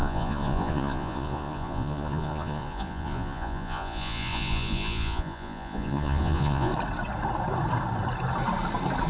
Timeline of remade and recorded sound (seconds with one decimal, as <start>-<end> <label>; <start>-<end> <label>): 0.0-6.7 remade; 6.7-9.1 recorded